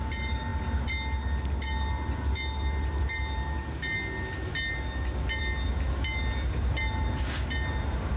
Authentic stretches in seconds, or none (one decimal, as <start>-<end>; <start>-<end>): 0.0-8.2